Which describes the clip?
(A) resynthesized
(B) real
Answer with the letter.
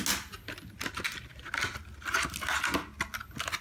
B